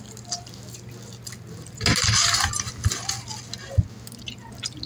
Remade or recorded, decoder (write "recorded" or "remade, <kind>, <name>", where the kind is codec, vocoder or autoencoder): recorded